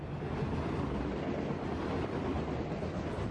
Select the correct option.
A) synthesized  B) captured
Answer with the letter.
B